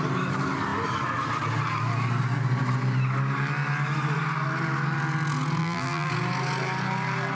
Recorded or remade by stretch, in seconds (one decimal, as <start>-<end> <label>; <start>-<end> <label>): 0.0-5.6 recorded; 5.6-6.1 remade; 6.1-7.3 recorded